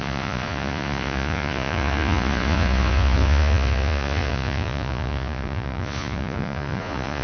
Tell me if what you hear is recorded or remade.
remade